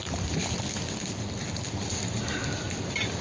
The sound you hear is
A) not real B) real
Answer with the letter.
B